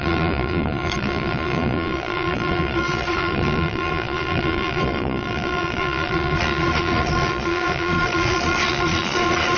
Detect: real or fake fake